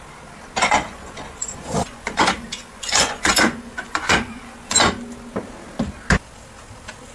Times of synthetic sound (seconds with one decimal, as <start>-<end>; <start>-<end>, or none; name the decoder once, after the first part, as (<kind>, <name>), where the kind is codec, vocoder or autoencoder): 0.6-4.9 (vocoder, Vocos)